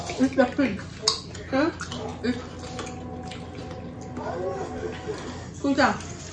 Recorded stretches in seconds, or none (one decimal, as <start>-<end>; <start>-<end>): 0.0-6.3